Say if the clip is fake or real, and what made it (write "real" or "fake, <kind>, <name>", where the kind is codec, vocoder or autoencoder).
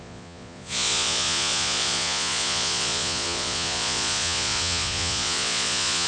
fake, vocoder, Vocos